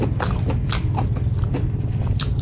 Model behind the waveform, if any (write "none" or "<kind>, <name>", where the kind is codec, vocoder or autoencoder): vocoder, BigVGAN v2